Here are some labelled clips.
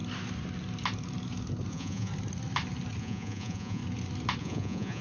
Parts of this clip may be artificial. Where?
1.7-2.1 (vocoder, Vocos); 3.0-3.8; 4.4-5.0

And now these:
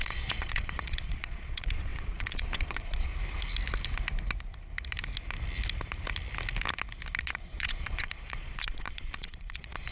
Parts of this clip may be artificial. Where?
0.0-3.1 (vocoder, Vocos); 7.2-9.9

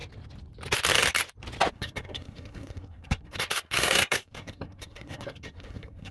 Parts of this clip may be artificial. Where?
1.7-6.1 (codec, SNAC)

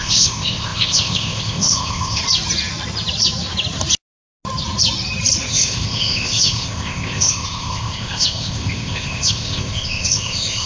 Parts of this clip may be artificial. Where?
0.0-2.2 (codec, ZipCodec); 5.5-10.7

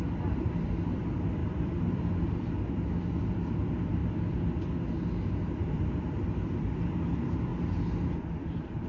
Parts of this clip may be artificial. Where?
0.0-4.0 (vocoder, BigVGAN v2); 5.2-8.9